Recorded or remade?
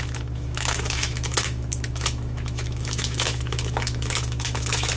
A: remade